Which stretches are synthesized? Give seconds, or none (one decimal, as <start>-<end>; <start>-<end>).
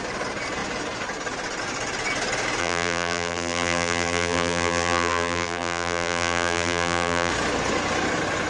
2.6-7.3